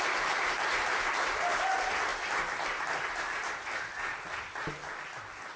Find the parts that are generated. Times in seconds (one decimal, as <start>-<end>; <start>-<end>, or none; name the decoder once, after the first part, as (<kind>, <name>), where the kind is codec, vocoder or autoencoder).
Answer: none